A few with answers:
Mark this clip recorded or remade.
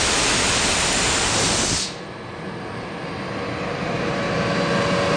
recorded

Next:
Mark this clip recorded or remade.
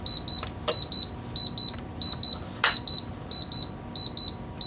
recorded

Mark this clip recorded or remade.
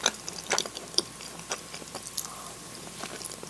recorded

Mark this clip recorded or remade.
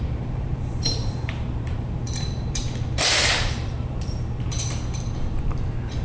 remade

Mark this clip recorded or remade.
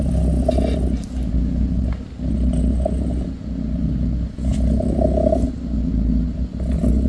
recorded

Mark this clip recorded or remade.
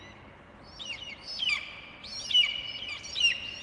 recorded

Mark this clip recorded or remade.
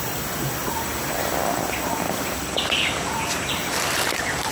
remade